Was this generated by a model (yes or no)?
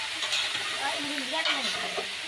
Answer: no